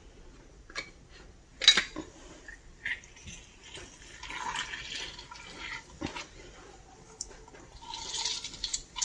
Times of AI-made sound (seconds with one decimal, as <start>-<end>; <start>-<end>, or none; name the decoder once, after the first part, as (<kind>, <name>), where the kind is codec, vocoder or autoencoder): none